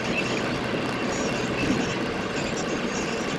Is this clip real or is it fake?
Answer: real